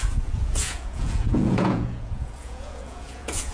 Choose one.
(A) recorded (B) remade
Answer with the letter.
B